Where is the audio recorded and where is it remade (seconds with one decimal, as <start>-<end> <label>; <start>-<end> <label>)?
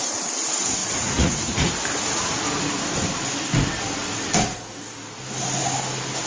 0.0-0.8 recorded; 0.8-1.7 remade; 1.7-6.3 recorded